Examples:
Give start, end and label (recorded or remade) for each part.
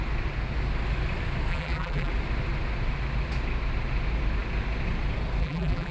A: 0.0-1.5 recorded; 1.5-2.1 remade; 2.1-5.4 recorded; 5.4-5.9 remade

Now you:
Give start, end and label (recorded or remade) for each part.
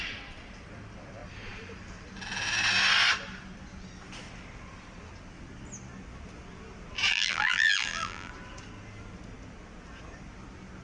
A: 0.0-7.1 recorded; 7.1-8.3 remade; 8.3-10.8 recorded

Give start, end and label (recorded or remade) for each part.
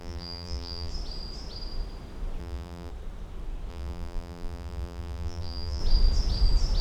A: 0.0-0.9 remade; 0.9-2.4 recorded; 2.4-2.9 remade; 2.9-3.7 recorded; 3.7-5.8 remade; 5.8-6.8 recorded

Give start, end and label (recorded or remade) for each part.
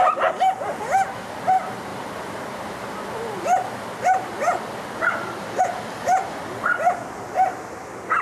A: 0.0-8.2 recorded